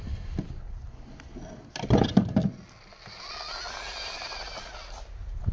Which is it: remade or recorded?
recorded